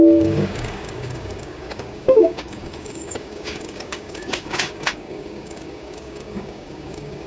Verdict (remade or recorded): remade